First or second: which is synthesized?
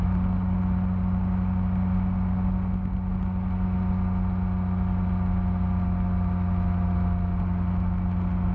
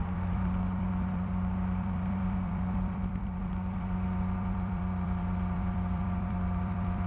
second